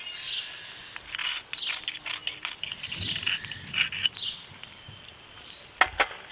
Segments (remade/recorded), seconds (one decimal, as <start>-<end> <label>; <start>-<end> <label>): 0.0-6.3 recorded